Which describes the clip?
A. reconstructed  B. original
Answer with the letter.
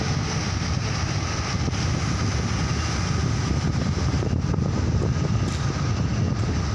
B